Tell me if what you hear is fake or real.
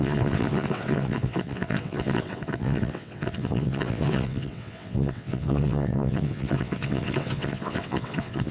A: fake